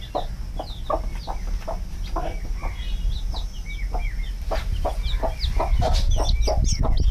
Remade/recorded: recorded